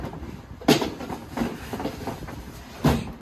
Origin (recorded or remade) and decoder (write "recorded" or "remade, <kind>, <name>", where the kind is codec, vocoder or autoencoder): recorded